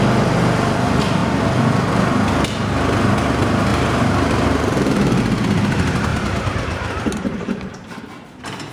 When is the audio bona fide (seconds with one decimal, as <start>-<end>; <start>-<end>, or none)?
0.0-3.7; 5.2-6.1; 8.0-8.7